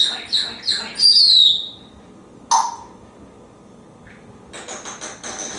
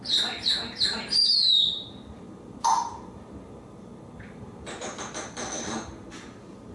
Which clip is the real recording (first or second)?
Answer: first